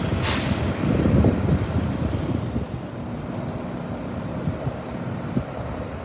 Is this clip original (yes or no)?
yes